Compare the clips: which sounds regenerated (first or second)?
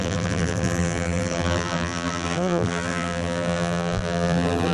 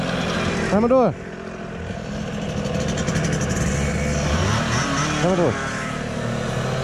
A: first